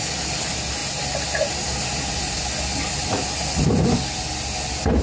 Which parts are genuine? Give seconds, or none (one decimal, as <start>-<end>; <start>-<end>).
0.0-5.0